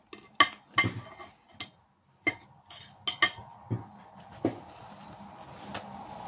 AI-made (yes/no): no